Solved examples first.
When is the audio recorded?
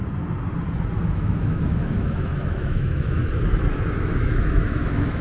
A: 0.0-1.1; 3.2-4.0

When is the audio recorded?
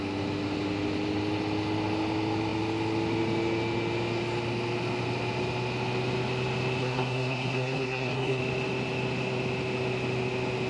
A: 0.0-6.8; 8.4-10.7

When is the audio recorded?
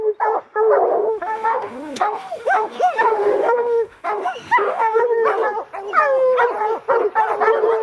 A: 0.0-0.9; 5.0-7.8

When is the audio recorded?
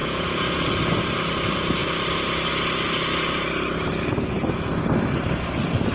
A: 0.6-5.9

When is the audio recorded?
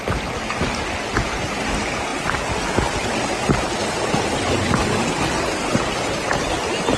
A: 0.0-7.0